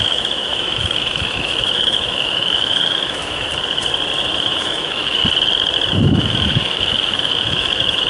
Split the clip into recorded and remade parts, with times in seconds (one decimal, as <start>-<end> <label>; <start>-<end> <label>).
0.0-3.5 remade; 3.5-4.3 recorded; 4.3-5.2 remade; 5.2-6.1 recorded; 6.1-8.1 remade